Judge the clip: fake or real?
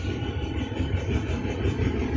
fake